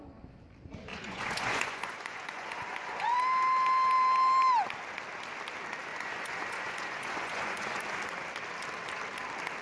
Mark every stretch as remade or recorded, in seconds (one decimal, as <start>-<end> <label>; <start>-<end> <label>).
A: 0.0-0.9 recorded; 0.9-3.2 remade; 3.2-5.9 recorded; 5.9-7.8 remade; 7.8-9.6 recorded